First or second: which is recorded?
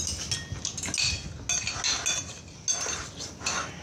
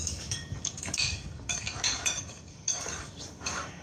first